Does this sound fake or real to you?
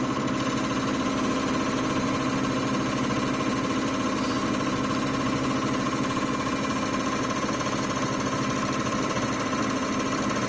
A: real